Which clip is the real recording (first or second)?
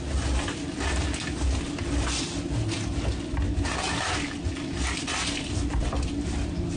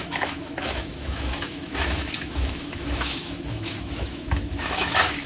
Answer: first